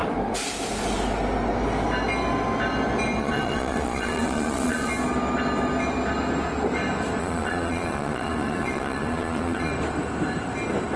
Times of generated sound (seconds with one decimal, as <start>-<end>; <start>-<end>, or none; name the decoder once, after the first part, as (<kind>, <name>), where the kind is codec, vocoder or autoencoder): 3.2-4.9 (vocoder, Vocos); 7.2-9.7